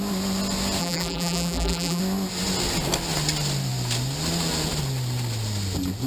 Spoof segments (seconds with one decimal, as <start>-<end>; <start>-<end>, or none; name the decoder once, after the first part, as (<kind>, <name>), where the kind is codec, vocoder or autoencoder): 0.8-2.0 (vocoder, BigVGAN v2)